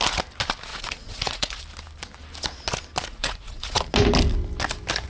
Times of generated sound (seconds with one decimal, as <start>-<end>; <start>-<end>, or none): 0.7-1.6; 3.1-3.8